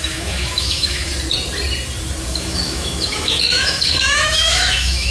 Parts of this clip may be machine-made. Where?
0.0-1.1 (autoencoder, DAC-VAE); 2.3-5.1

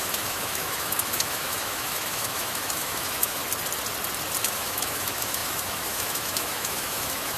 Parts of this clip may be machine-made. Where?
0.0-3.4 (autoencoder, DAC-VAE); 4.4-7.4

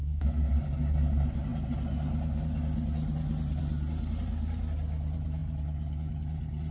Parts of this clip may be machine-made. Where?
0.0-0.5 (autoencoder, DAC-VAE)

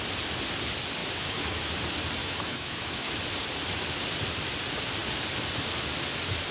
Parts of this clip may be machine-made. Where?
1.0-1.7 (autoencoder, DAC-VAE); 2.2-3.1